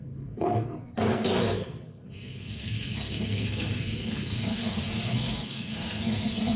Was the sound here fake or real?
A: fake